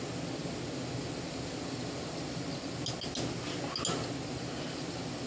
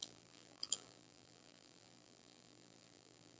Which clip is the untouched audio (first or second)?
first